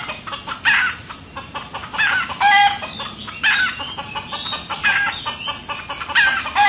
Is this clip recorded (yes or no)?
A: yes